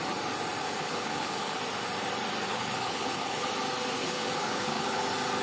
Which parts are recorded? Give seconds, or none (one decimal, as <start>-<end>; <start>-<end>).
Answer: 0.0-0.6; 1.6-2.5; 3.5-4.0; 5.0-5.4